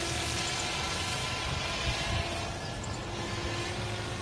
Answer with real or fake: real